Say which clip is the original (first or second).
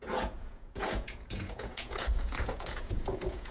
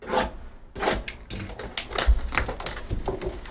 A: second